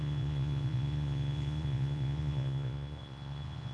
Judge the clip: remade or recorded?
remade